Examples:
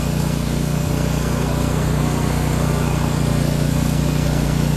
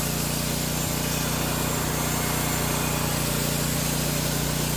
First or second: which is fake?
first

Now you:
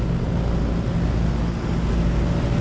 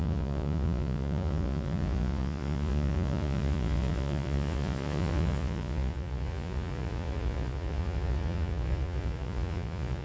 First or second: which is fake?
second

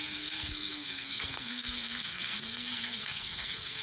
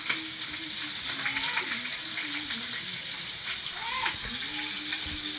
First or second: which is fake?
first